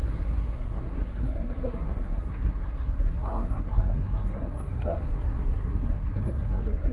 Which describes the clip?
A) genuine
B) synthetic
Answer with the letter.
B